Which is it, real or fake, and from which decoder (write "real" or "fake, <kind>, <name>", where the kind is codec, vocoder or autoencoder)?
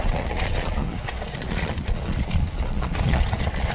fake, vocoder, Vocos